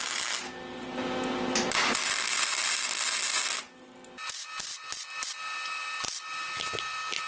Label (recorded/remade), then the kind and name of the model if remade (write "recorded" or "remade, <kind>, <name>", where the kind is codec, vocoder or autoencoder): recorded